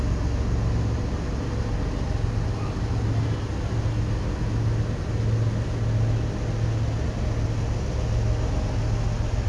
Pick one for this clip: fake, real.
real